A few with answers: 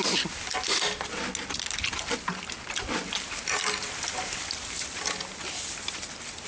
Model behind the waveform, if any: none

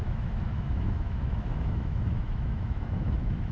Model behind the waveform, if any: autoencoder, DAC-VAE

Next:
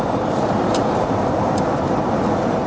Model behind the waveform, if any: vocoder, BigVGAN v2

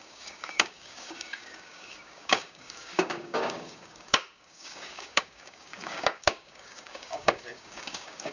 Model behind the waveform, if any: codec, DAC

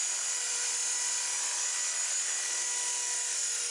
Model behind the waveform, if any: none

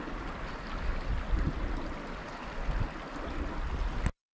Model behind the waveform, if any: none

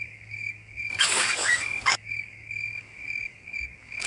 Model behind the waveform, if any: codec, DAC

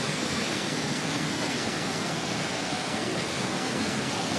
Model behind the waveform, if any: codec, SNAC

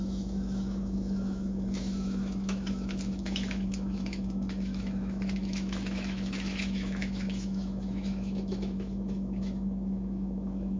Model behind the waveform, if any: autoencoder, DAC-VAE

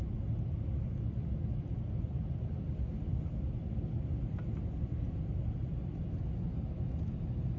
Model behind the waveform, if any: none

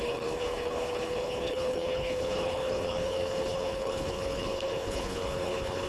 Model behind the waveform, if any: codec, HILCodec